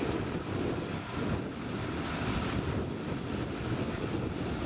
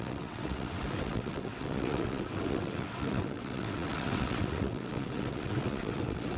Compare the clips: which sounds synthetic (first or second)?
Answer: second